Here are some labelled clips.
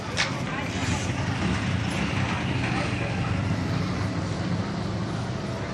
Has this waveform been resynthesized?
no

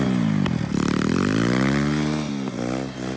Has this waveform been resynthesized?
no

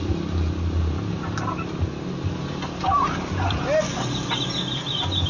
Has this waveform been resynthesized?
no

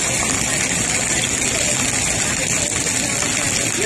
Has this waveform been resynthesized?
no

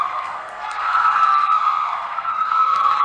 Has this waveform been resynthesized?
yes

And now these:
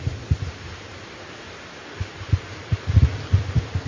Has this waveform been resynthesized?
no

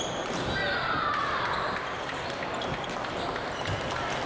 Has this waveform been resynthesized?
no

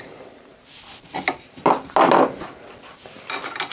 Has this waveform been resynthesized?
no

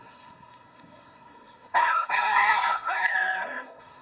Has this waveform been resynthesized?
yes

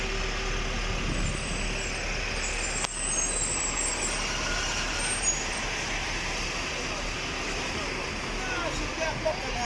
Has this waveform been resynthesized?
no